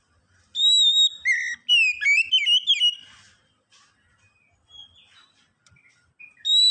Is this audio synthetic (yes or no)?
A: no